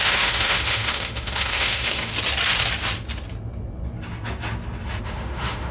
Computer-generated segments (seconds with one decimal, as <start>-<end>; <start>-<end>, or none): 0.0-2.1; 5.0-5.7